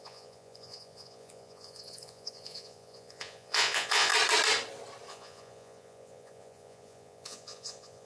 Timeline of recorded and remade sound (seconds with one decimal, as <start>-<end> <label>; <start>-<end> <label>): 0.0-4.1 remade; 4.1-5.1 recorded; 5.1-8.1 remade